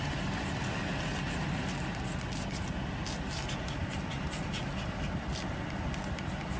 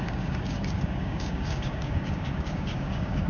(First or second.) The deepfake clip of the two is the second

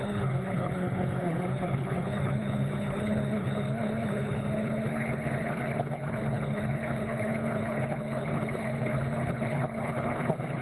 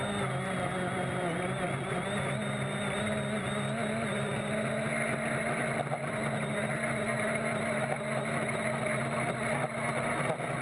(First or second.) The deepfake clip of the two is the first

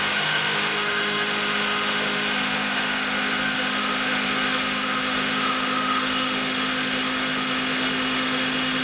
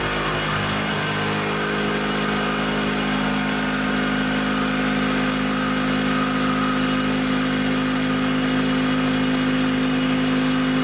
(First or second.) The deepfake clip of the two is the first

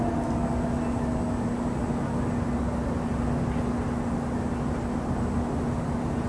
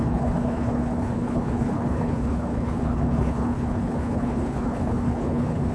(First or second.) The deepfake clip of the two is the second